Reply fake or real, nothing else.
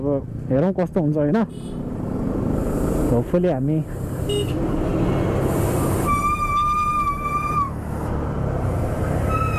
real